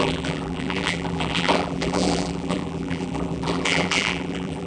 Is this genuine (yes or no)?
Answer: no